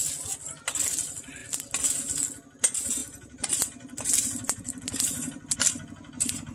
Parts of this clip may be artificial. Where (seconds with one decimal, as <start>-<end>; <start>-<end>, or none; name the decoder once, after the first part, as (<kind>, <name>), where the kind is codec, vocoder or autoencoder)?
3.0-5.7 (vocoder, BigVGAN v2)